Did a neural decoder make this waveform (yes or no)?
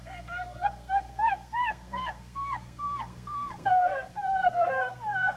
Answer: yes